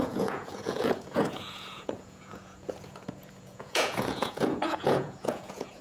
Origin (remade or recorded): remade